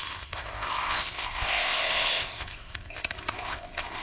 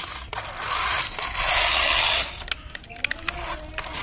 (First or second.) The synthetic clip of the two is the first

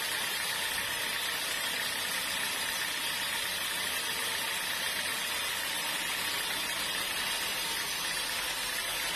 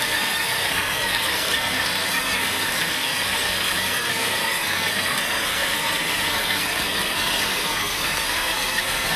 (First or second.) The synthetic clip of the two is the second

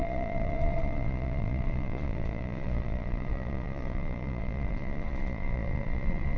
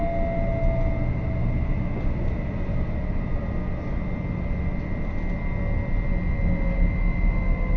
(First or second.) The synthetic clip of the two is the first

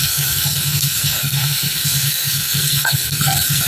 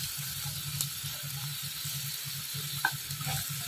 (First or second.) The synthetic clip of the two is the first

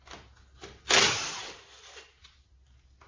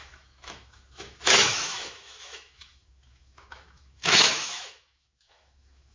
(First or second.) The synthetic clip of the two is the second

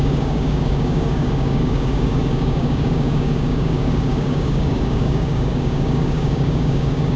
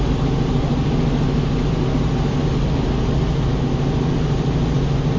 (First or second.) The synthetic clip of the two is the first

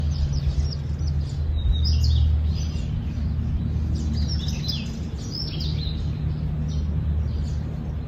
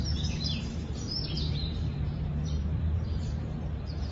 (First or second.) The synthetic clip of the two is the second